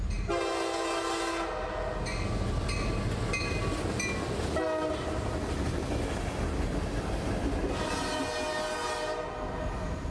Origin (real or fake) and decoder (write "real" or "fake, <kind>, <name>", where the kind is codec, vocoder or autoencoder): real